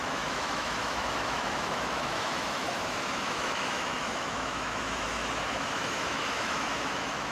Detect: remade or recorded remade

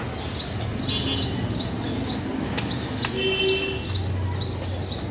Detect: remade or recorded recorded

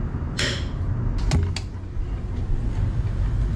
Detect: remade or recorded recorded